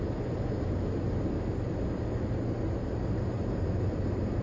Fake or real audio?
real